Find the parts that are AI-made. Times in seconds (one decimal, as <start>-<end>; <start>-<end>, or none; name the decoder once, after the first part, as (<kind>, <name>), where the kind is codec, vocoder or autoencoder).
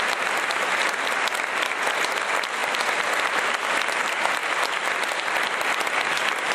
none